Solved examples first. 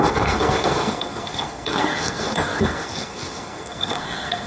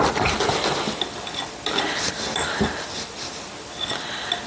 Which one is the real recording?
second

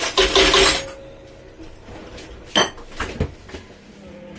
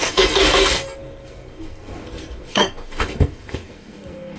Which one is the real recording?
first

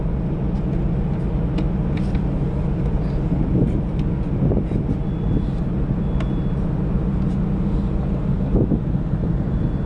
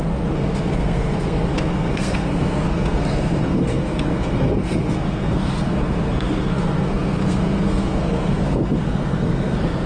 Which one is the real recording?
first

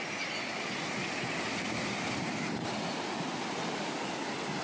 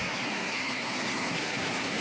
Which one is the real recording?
first